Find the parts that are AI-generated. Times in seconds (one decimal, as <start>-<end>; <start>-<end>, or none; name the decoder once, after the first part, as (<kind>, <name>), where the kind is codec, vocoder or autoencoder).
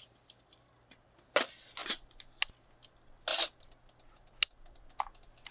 none